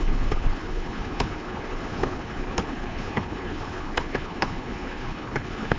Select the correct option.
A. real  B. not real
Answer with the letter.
B